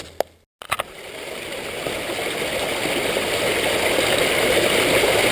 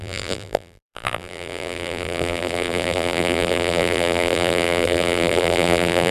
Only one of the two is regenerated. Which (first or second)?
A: second